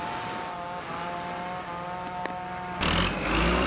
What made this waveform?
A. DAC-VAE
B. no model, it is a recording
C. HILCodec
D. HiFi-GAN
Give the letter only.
B